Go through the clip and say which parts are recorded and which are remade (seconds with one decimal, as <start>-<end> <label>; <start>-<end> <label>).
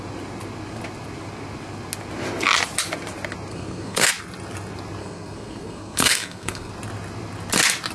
0.0-3.5 recorded; 3.5-4.1 remade; 4.1-5.0 recorded; 5.0-6.7 remade; 6.7-7.9 recorded